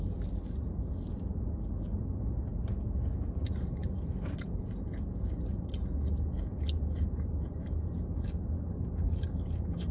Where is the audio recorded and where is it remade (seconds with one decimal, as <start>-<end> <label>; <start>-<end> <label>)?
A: 0.0-9.9 recorded